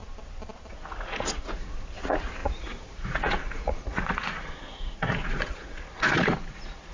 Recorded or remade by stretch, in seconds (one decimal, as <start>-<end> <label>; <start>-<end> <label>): 0.0-0.7 recorded; 0.7-6.9 remade